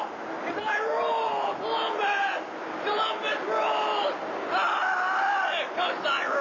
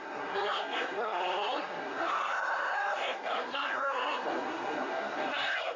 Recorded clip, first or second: first